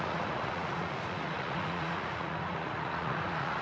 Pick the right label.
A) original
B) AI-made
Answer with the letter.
B